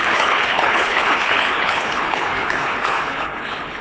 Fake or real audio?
fake